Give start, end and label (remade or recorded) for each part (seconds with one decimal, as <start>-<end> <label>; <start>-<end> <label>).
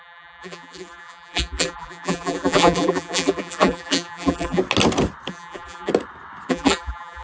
0.0-4.6 remade; 4.6-5.3 recorded; 5.3-5.9 remade; 5.9-6.5 recorded; 6.5-7.2 remade